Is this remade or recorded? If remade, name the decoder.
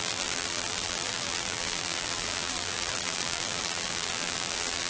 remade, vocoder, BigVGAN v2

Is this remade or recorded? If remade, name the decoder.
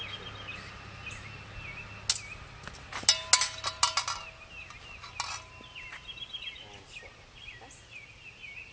recorded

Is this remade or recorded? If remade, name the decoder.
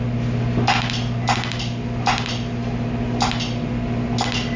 recorded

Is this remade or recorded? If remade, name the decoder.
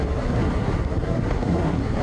remade, codec, SNAC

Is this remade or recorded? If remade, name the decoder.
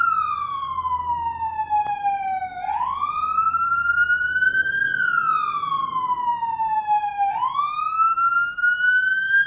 recorded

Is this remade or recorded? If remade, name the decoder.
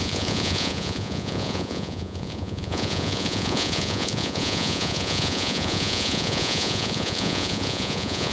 remade, vocoder, Vocos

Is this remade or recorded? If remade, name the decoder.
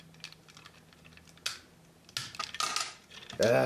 recorded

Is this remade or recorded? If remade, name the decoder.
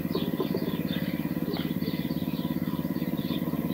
remade, vocoder, BigVGAN v2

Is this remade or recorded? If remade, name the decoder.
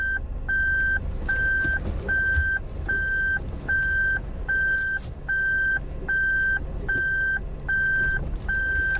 recorded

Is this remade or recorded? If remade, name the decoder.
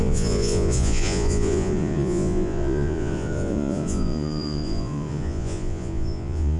remade, vocoder, Vocos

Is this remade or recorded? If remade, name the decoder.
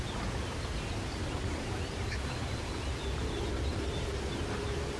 recorded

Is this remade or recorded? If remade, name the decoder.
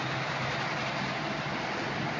recorded